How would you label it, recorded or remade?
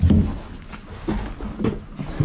recorded